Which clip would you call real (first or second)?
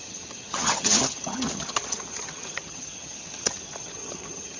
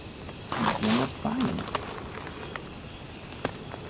second